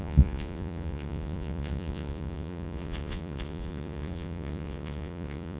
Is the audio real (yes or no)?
no